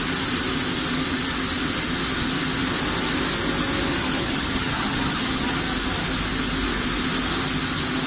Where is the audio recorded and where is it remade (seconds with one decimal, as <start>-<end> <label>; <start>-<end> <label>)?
0.0-3.9 recorded; 3.9-5.6 remade; 5.6-8.1 recorded